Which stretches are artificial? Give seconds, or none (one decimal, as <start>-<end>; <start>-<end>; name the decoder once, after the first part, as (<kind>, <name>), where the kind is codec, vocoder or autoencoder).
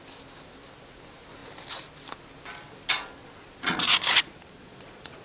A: 3.2-5.2 (vocoder, Vocos)